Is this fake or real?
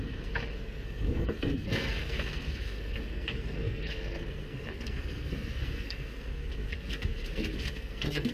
fake